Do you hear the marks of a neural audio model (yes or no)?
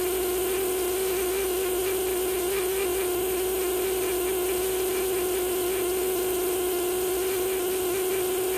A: no